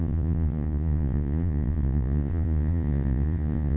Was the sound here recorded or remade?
remade